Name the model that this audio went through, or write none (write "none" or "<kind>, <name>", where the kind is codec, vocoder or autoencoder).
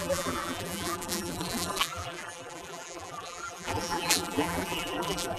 vocoder, BigVGAN v2